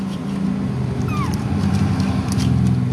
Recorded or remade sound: recorded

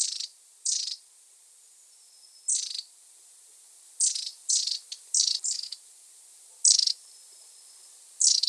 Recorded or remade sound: recorded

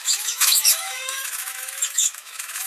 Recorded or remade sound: remade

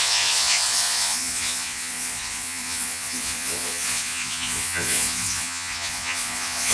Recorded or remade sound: remade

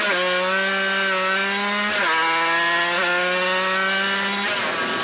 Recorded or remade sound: recorded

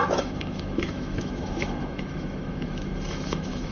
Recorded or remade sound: remade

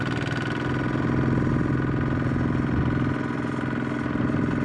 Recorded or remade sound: recorded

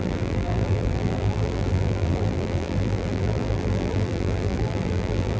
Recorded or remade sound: remade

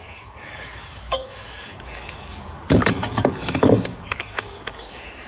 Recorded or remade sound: remade